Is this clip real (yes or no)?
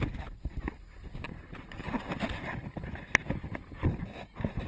yes